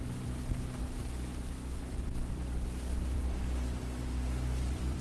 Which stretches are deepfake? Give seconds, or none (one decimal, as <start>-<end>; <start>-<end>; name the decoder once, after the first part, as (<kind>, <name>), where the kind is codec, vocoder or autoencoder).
0.0-5.0 (vocoder, BigVGAN v2)